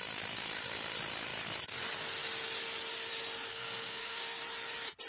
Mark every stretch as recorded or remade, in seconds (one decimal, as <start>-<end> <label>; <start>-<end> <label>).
0.0-3.5 recorded; 3.5-4.2 remade; 4.2-5.1 recorded